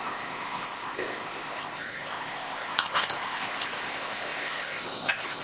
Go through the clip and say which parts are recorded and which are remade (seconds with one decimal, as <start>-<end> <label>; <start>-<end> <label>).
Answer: 0.0-5.4 remade